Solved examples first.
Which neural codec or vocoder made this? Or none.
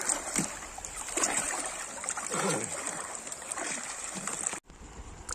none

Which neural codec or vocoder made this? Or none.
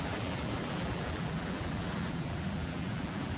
vocoder, BigVGAN v2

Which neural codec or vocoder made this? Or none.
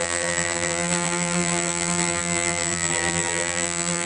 vocoder, BigVGAN v2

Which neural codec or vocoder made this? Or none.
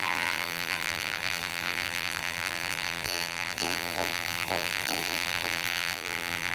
vocoder, BigVGAN v2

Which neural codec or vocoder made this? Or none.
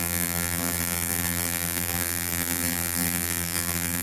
vocoder, BigVGAN v2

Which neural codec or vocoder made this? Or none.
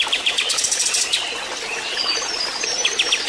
none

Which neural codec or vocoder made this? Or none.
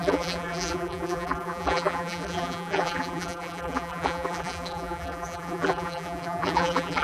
vocoder, BigVGAN v2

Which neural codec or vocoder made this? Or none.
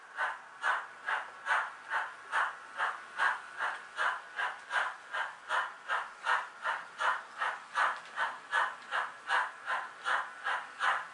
none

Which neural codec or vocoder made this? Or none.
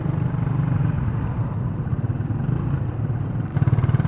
none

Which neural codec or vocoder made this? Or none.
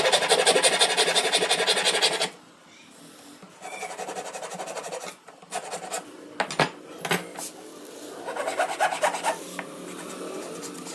none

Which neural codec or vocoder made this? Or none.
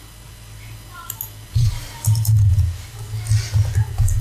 none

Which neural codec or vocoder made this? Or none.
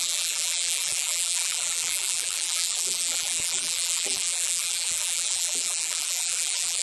vocoder, BigVGAN v2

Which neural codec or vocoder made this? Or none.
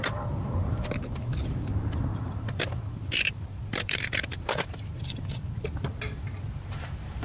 vocoder, BigVGAN v2